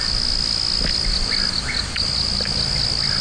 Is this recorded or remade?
recorded